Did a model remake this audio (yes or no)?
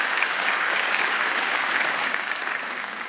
yes